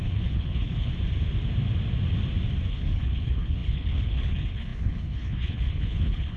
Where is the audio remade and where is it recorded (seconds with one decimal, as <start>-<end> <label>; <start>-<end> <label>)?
0.0-0.9 remade; 0.9-2.7 recorded; 2.7-6.4 remade